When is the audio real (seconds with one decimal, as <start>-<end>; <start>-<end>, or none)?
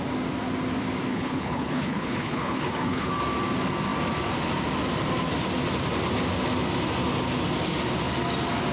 0.0-1.1; 3.1-8.7